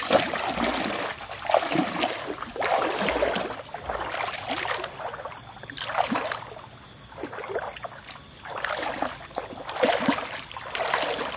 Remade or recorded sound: recorded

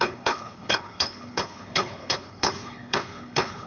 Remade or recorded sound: remade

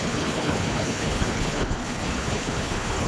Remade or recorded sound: remade